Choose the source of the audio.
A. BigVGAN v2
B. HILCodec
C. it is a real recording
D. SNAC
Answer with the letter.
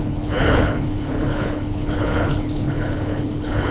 B